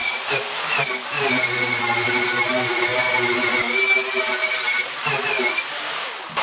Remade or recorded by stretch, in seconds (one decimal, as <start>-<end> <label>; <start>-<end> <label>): 0.0-2.1 remade; 2.1-4.4 recorded; 4.4-5.8 remade; 5.8-6.4 recorded

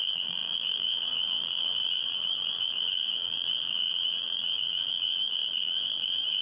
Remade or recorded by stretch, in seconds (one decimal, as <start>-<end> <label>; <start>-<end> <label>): 0.0-6.4 remade

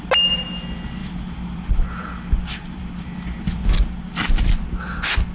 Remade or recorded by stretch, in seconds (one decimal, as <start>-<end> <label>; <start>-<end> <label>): 0.0-1.0 recorded; 1.0-3.4 remade; 3.4-5.3 recorded

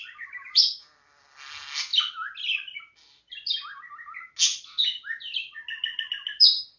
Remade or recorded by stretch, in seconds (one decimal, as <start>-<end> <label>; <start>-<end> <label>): 0.0-0.7 remade; 0.7-6.8 recorded

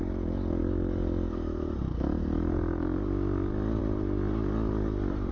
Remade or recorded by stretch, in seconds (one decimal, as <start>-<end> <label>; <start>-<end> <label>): 0.0-5.3 recorded

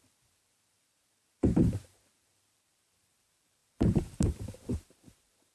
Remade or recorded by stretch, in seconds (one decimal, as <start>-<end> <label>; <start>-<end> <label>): 0.0-5.5 remade

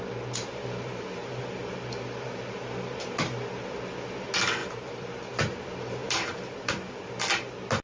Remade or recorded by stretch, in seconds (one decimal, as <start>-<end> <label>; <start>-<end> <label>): 0.0-0.4 recorded; 0.4-1.2 remade; 1.2-4.6 recorded; 4.6-5.1 remade; 5.1-6.0 recorded; 6.0-6.7 remade; 6.7-7.8 recorded